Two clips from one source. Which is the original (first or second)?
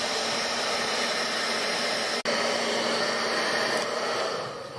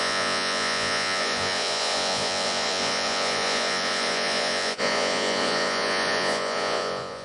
first